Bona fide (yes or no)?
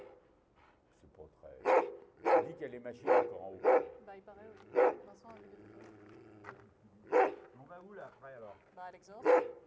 yes